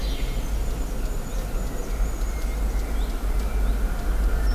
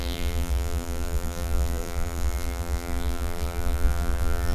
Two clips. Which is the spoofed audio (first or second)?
second